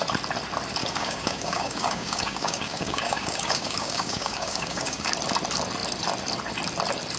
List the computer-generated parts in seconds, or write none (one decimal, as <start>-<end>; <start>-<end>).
0.8-5.1